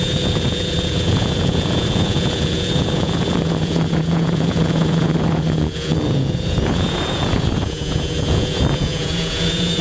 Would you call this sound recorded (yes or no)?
no